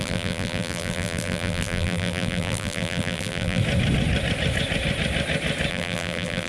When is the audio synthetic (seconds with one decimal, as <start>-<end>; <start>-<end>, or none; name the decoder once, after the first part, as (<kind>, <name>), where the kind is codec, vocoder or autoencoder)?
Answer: 0.0-3.6 (vocoder, BigVGAN v2); 5.7-6.5